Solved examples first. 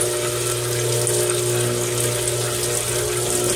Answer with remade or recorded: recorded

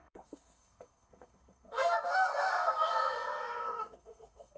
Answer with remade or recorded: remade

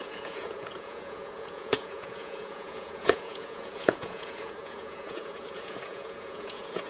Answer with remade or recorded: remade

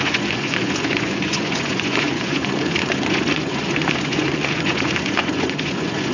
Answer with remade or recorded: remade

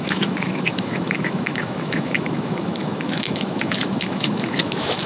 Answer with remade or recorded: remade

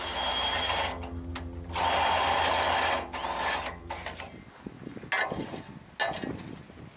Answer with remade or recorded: recorded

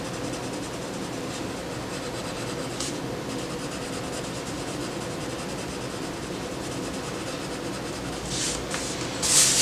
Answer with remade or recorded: recorded